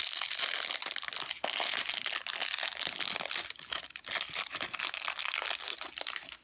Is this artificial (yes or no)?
no